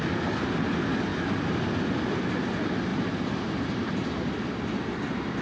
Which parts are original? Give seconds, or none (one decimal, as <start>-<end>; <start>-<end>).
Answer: 0.0-5.4